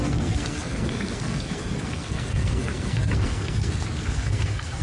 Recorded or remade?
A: remade